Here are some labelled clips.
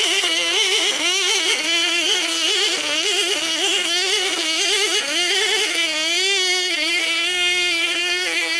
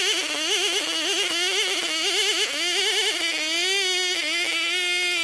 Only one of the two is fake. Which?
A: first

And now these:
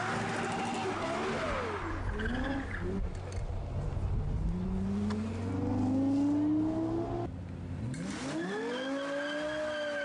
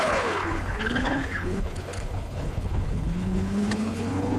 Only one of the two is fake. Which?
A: second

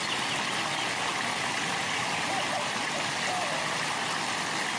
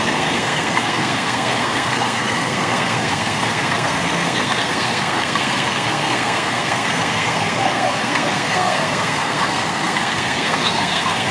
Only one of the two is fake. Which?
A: second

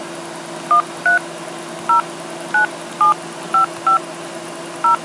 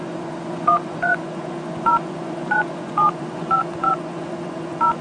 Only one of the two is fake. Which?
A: second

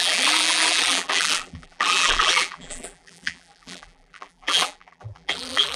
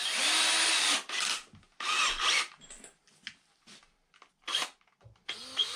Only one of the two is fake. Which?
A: first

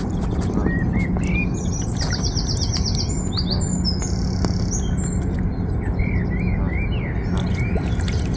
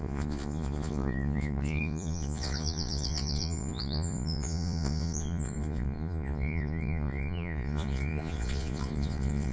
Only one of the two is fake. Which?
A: second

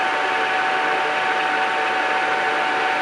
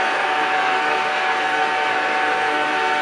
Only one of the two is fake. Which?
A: second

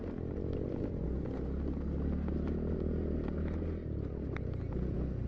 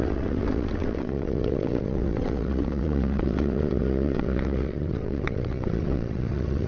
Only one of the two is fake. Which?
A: second